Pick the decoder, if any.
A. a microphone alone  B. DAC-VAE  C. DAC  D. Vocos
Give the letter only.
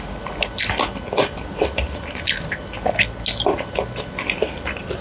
A